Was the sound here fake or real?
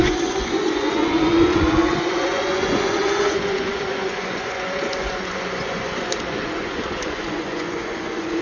fake